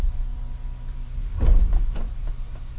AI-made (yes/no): no